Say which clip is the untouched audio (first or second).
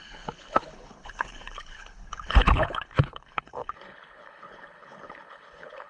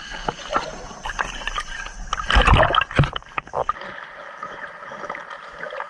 second